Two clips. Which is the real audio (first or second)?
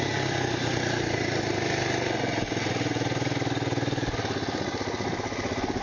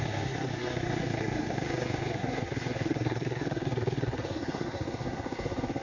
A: first